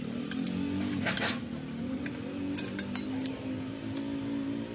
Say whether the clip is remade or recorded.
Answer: recorded